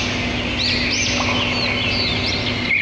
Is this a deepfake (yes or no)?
no